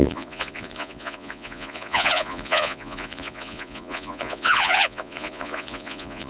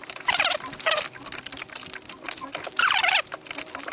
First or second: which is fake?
first